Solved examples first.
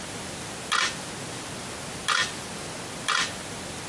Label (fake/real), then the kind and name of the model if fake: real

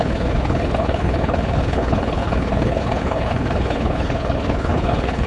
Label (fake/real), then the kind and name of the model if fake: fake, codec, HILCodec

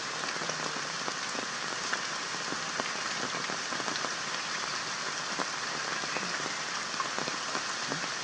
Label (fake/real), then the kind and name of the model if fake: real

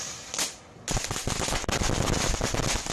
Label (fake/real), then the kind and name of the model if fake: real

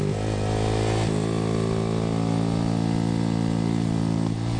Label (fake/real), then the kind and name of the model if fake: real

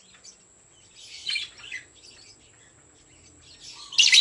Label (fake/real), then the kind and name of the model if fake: real